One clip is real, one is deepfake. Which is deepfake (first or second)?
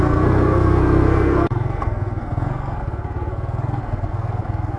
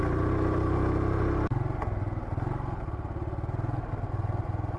first